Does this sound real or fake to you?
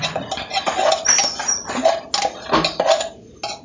real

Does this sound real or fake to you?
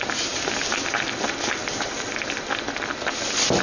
real